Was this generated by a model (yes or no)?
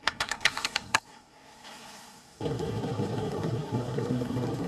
yes